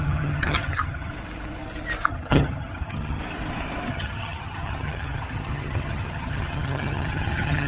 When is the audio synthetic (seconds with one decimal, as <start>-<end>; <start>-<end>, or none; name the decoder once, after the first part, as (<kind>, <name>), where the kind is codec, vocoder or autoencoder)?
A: 0.0-1.1 (vocoder, HiFi-GAN); 2.1-3.2; 3.9-7.7